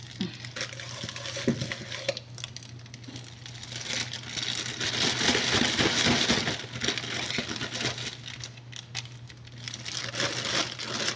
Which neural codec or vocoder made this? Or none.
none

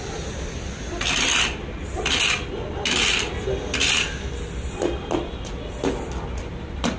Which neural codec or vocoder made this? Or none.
none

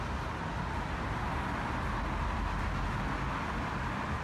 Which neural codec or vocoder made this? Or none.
none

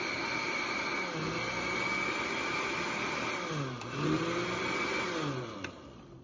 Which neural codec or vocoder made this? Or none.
none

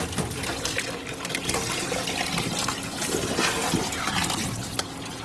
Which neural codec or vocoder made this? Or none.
none